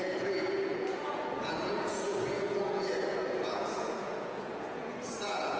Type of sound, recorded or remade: remade